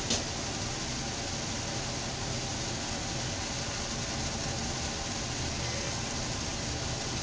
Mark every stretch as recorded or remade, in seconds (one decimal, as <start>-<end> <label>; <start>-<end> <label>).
0.0-5.5 recorded; 5.5-6.0 remade; 6.0-7.2 recorded